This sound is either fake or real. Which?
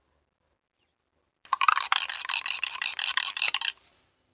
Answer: real